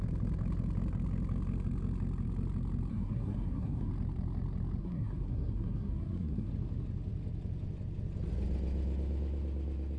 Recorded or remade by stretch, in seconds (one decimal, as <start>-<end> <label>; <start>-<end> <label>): 0.0-2.9 recorded; 2.9-3.9 remade; 3.9-4.8 recorded; 4.8-6.5 remade; 6.5-10.0 recorded